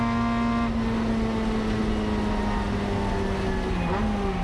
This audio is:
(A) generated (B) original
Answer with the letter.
B